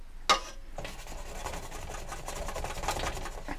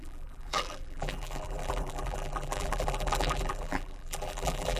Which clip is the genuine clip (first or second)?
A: first